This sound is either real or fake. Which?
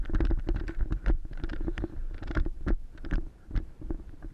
fake